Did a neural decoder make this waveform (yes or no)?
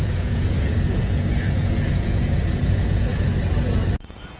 yes